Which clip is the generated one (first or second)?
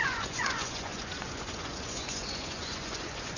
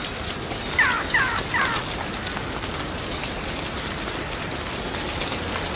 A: first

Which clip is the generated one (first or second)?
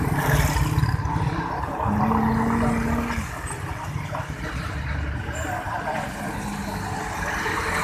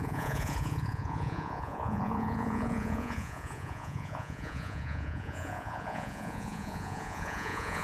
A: second